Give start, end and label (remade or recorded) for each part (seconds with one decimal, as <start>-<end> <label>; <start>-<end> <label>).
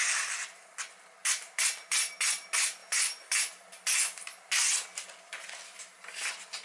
0.0-6.6 recorded